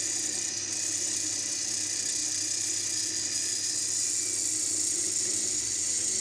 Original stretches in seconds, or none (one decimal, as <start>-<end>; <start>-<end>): 0.0-6.2